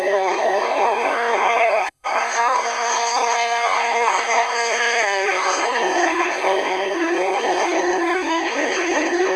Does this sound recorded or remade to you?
remade